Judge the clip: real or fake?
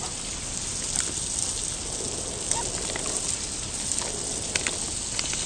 real